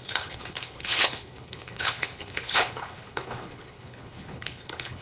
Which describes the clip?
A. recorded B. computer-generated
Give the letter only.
B